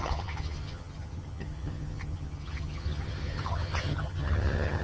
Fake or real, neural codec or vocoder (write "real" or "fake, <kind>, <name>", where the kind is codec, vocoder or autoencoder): fake, vocoder, HiFi-GAN